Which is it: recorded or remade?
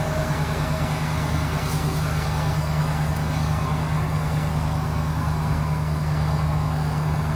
remade